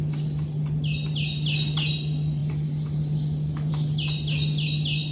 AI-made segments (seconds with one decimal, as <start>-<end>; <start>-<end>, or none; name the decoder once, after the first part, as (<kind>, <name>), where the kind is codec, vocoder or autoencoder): none